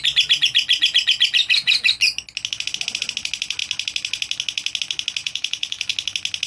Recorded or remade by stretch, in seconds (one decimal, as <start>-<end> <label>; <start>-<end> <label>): 0.0-1.4 recorded; 1.4-1.9 remade; 1.9-5.2 recorded; 5.2-5.9 remade; 5.9-6.5 recorded